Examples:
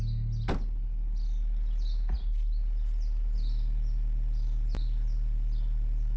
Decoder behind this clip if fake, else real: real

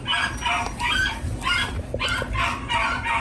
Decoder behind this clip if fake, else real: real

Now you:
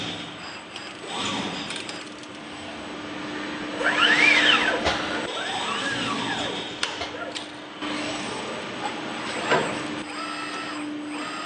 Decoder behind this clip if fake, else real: real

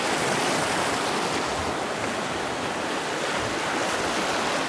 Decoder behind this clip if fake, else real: real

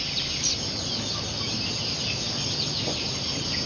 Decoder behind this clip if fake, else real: real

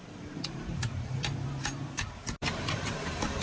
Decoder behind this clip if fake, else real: fake, vocoder, BigVGAN v2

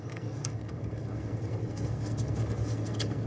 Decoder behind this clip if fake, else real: fake, codec, SNAC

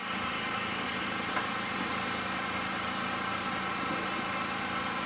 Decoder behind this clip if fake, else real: real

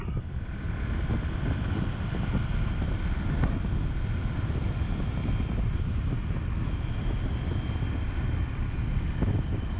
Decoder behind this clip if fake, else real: real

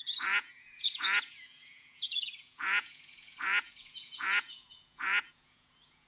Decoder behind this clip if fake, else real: fake, vocoder, Vocos